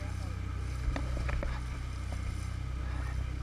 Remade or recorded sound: recorded